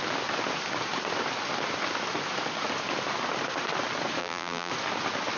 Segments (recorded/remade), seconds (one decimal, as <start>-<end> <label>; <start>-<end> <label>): 0.0-4.2 recorded; 4.2-4.7 remade; 4.7-5.4 recorded